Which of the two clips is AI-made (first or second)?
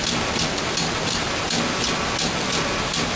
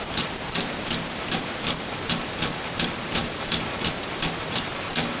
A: second